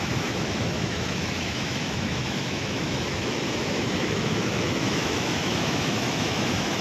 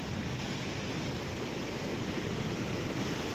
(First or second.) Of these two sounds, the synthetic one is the first